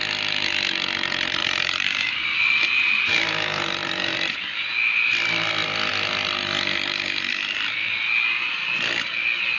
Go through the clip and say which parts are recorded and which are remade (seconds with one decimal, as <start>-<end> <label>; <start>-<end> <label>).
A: 0.0-1.4 recorded; 1.4-3.2 remade; 3.2-9.6 recorded

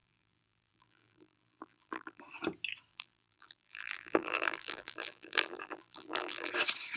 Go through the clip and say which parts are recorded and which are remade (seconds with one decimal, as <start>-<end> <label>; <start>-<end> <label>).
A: 0.0-2.2 remade; 2.2-2.9 recorded; 2.9-6.5 remade; 6.5-7.0 recorded

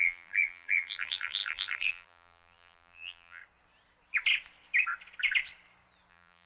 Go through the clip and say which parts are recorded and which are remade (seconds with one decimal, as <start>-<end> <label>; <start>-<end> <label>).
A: 0.0-3.4 remade; 3.4-6.1 recorded; 6.1-6.5 remade